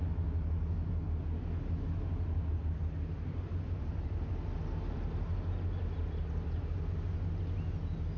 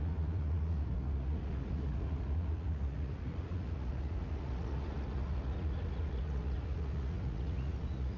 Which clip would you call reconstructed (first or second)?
second